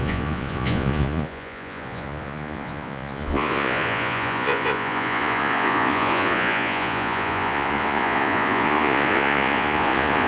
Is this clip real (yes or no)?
no